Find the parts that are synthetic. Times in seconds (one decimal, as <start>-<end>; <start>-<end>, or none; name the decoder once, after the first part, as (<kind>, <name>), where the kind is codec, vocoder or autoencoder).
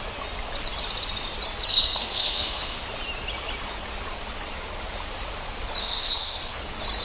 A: 1.7-2.8 (codec, SNAC); 5.8-6.6